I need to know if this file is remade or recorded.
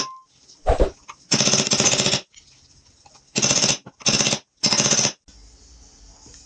recorded